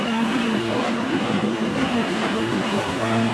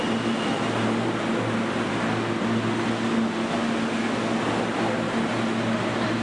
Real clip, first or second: second